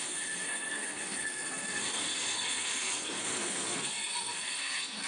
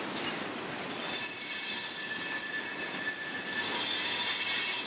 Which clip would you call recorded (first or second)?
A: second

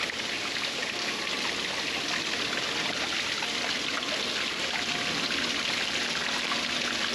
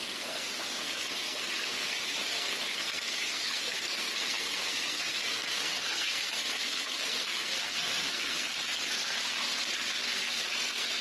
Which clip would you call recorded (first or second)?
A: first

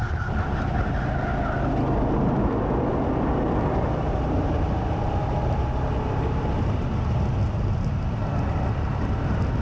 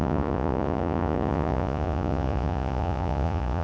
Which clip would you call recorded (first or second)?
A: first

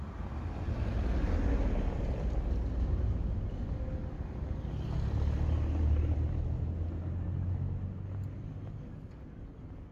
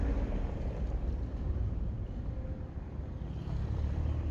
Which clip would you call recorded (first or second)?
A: first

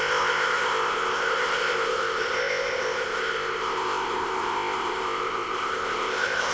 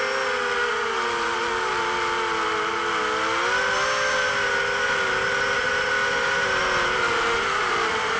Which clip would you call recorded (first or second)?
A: second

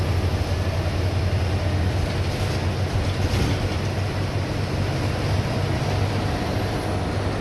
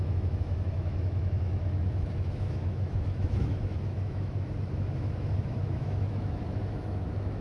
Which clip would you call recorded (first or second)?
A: first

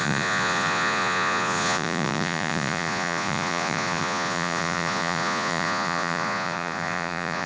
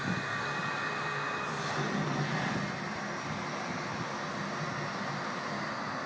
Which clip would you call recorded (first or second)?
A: second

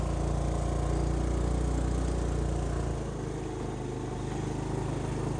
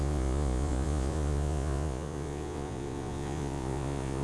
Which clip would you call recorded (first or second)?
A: first